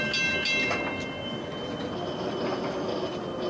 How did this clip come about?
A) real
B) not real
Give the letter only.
A